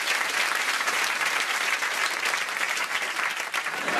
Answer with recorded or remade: remade